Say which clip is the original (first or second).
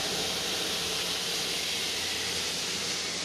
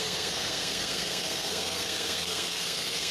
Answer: first